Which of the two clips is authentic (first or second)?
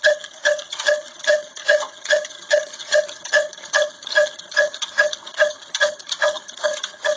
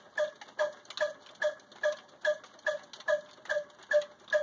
second